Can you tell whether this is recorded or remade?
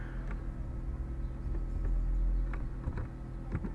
recorded